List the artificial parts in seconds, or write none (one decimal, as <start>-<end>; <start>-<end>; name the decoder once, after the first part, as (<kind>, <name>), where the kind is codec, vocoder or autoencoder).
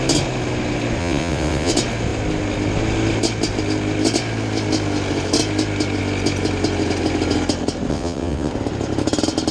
1.0-1.7 (vocoder, WaveNeXt); 7.9-8.5